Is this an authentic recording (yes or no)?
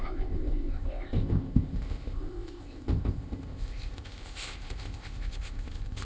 no